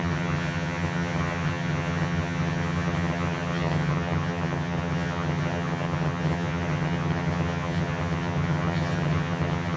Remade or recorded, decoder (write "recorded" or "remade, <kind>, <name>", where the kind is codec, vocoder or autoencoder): remade, vocoder, HiFi-GAN